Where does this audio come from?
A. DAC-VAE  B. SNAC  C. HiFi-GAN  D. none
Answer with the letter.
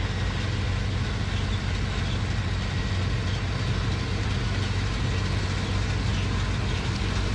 D